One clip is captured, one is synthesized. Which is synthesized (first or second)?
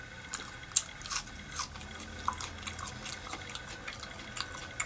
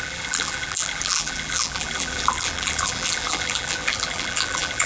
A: second